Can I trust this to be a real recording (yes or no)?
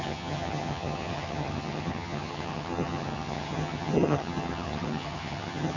no